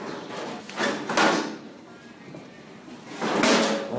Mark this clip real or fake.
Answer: real